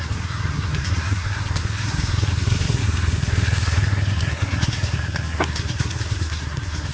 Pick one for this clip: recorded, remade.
remade